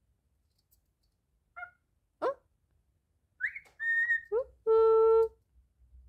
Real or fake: real